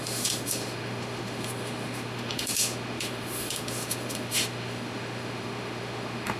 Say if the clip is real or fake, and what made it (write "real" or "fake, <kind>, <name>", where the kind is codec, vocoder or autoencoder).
fake, autoencoder, DAC-VAE